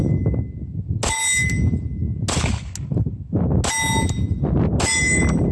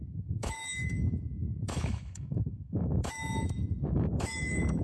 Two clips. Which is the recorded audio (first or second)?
first